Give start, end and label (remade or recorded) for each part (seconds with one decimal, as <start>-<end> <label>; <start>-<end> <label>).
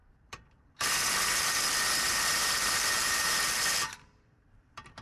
0.0-5.0 remade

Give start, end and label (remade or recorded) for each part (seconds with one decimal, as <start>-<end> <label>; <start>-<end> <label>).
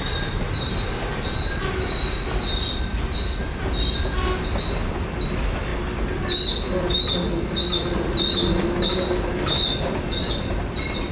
0.0-11.1 recorded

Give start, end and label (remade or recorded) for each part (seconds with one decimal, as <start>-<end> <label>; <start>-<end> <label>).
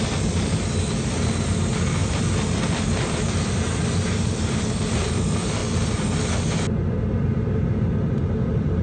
0.0-5.6 remade; 5.6-7.2 recorded; 7.2-8.8 remade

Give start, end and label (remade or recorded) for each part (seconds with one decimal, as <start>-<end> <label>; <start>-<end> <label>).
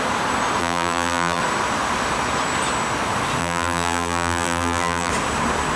0.0-0.6 recorded; 0.6-1.4 remade; 1.4-3.4 recorded; 3.4-5.1 remade; 5.1-5.8 recorded